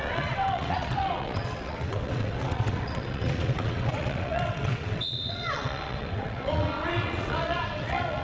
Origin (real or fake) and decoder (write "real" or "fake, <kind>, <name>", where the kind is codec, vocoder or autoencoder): fake, vocoder, WaveNeXt